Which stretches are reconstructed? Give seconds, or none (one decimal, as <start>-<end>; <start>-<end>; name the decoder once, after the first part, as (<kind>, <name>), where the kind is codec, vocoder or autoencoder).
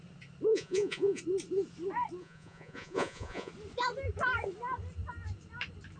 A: 0.5-1.2 (vocoder, Vocos); 2.2-3.5